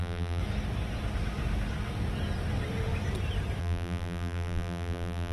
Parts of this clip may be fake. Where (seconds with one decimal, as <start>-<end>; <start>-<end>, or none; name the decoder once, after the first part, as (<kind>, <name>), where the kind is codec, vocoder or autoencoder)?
0.0-0.4 (vocoder, BigVGAN v2); 3.6-5.3

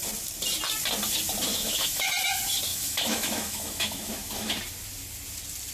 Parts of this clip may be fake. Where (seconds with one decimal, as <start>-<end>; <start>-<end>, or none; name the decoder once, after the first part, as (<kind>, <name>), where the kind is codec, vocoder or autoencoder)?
1.5-2.1 (autoencoder, DAC-VAE); 2.7-4.6

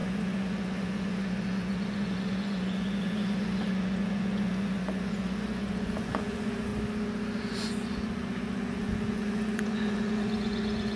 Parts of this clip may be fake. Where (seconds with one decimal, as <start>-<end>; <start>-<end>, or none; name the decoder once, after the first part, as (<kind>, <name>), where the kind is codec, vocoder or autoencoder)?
0.0-6.7 (vocoder, Vocos); 7.4-11.0

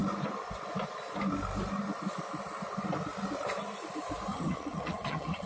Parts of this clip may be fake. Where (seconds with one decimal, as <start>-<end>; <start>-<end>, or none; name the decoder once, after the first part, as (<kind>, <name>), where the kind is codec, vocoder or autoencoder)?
4.3-5.5 (vocoder, HiFi-GAN)

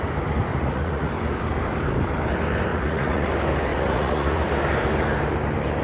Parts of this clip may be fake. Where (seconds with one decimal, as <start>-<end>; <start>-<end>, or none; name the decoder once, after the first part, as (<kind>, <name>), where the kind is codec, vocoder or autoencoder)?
0.5-1.1 (vocoder, Vocos); 2.7-3.3; 3.7-4.4

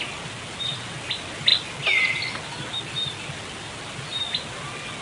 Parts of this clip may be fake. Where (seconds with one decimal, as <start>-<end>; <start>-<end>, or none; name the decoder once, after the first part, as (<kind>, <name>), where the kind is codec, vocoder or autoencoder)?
none

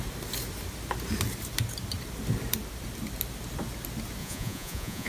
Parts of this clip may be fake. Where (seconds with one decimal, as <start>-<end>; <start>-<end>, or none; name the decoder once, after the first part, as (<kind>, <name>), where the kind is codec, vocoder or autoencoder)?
4.2-5.1 (vocoder, Vocos)

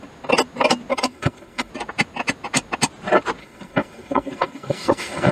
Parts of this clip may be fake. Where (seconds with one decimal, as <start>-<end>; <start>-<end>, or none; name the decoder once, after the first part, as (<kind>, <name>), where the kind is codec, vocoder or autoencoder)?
0.9-1.7 (codec, SNAC); 3.4-5.3